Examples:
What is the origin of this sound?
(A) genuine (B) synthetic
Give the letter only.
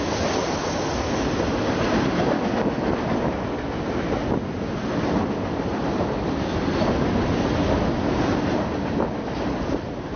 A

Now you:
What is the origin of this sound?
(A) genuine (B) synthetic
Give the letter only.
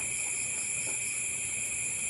A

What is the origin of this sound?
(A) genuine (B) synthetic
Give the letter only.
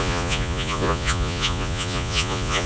B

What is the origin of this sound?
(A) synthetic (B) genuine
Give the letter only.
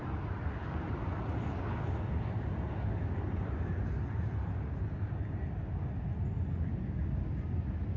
B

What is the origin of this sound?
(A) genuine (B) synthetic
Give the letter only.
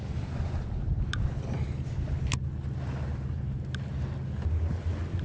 A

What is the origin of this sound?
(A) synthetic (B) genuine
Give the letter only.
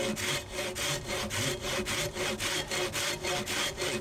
B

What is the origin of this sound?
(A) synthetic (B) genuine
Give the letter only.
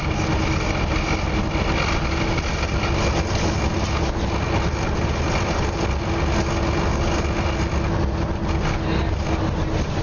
B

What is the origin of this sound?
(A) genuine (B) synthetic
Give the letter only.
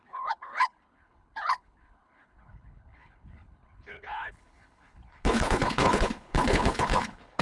B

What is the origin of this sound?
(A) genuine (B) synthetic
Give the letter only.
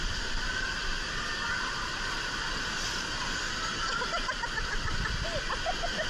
A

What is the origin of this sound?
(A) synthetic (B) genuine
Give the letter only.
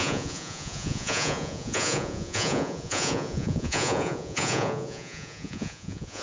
A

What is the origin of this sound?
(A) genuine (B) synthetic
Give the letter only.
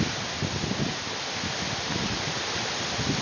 A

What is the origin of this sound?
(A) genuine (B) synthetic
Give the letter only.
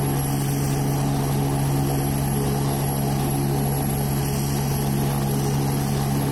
A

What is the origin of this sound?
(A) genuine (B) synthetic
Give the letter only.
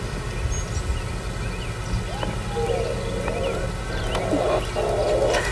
A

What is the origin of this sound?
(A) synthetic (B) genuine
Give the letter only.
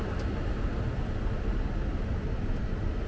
B